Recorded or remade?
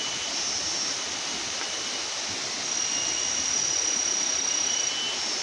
recorded